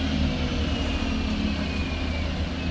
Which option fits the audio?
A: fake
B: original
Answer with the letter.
B